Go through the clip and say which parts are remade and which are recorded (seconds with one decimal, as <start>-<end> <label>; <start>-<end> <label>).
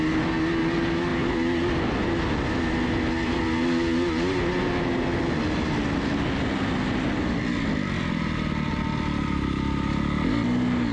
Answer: 0.0-10.9 recorded